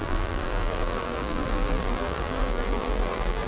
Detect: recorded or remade remade